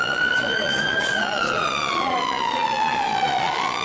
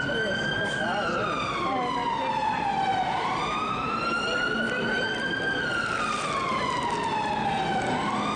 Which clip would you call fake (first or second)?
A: first